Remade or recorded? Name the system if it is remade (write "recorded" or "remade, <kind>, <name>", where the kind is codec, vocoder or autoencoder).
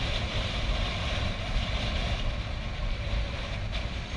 recorded